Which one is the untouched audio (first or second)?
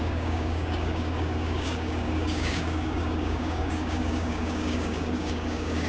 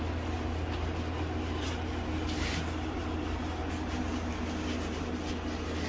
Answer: second